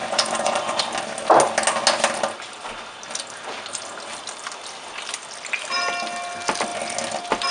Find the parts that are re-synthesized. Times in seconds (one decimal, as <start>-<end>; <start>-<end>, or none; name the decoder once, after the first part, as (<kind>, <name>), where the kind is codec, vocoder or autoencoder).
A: 0.0-0.8 (vocoder, Vocos)